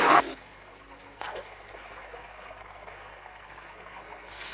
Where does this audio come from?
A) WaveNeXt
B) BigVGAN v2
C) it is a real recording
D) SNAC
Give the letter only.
D